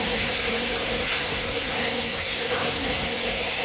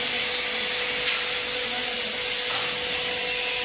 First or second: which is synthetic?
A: first